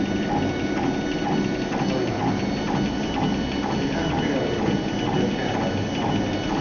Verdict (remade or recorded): recorded